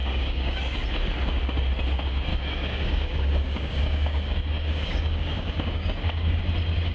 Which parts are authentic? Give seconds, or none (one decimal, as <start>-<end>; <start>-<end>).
0.6-2.3; 6.4-6.9